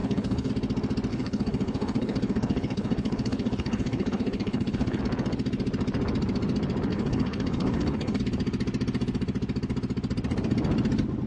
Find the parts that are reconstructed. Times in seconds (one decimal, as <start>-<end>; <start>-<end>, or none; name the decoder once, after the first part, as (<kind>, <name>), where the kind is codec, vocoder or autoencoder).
0.0-0.5 (codec, HILCodec); 1.1-5.0; 6.9-8.2